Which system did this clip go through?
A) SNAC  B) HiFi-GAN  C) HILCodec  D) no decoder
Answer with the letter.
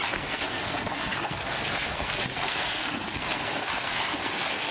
A